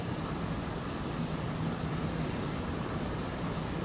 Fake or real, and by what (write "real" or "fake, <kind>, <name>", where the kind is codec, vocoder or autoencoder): real